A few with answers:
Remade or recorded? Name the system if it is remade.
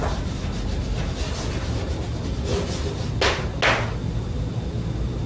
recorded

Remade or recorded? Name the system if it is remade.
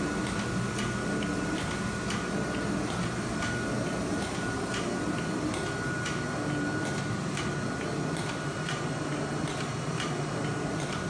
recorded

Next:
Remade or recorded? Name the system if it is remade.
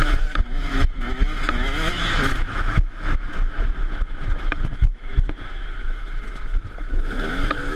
remade, autoencoder, DAC-VAE